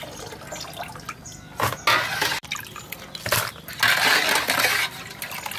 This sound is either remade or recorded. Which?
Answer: recorded